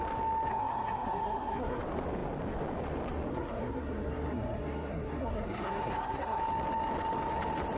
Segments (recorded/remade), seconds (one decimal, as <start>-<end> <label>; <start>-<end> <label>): 0.0-0.5 recorded; 0.5-1.8 remade; 1.8-3.3 recorded; 3.3-6.4 remade; 6.4-7.8 recorded